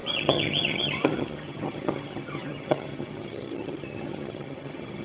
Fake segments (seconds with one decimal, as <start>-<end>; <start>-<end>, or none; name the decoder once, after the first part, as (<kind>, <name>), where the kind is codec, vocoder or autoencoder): 0.0-5.0 (vocoder, HiFi-GAN)